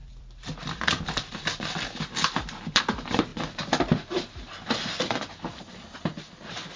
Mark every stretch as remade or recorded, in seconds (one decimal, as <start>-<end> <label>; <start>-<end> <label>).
0.0-2.8 remade; 2.8-6.8 recorded